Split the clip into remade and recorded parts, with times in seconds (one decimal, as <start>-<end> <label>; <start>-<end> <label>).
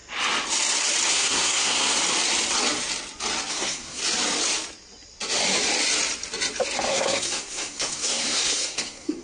0.0-1.1 recorded; 1.1-2.0 remade; 2.0-3.5 recorded; 3.5-4.0 remade; 4.0-6.9 recorded; 6.9-9.2 remade